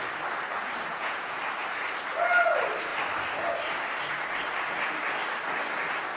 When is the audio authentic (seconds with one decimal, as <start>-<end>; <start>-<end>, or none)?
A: 0.0-0.9; 1.4-6.2